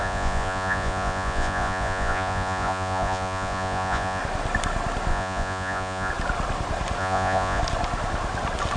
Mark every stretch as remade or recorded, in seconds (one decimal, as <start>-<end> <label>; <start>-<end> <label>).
0.0-4.2 remade; 4.2-5.1 recorded; 5.1-6.1 remade; 6.1-7.0 recorded; 7.0-7.6 remade; 7.6-8.8 recorded